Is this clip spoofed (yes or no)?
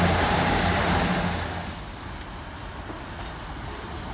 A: no